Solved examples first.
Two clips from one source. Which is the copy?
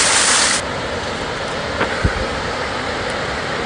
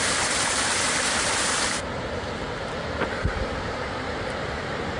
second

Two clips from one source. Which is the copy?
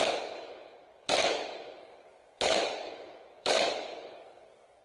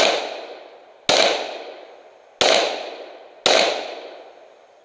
first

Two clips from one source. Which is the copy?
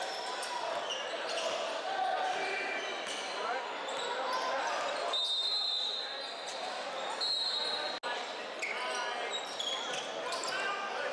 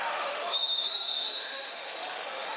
second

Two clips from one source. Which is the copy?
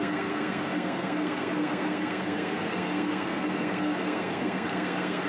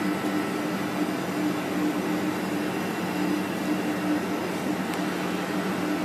first